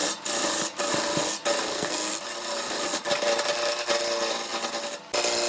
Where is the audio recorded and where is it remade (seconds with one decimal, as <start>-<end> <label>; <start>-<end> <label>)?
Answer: 0.0-1.7 recorded; 1.7-2.2 remade; 2.2-5.5 recorded